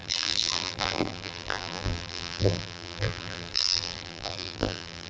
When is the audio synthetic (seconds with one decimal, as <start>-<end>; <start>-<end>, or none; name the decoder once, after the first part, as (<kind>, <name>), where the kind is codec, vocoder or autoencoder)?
0.0-5.1 (vocoder, BigVGAN v2)